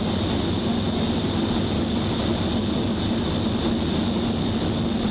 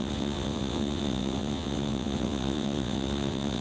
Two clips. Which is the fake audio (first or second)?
second